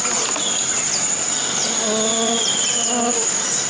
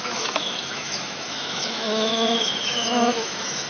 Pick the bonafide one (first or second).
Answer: first